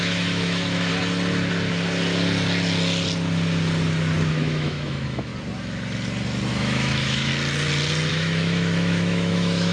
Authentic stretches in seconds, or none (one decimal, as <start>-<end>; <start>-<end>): 0.9-4.3; 5.3-6.5; 7.3-8.1